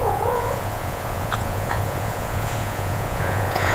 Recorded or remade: remade